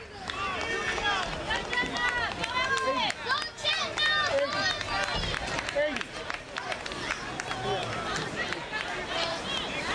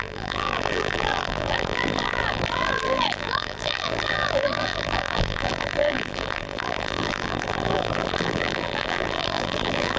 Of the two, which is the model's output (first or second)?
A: second